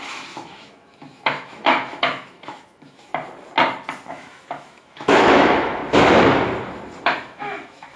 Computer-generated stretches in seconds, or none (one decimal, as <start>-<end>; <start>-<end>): 0.0-3.1; 4.1-5.8; 7.0-8.0